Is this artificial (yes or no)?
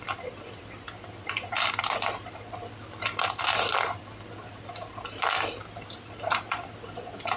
no